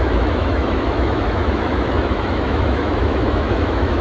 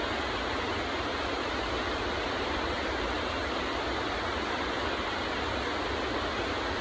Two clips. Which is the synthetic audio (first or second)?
first